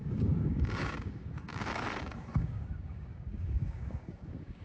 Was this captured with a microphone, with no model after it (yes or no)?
no